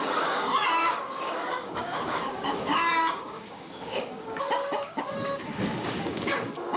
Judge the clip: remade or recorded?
remade